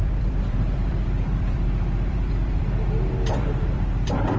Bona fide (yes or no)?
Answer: no